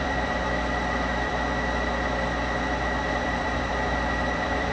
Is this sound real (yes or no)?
no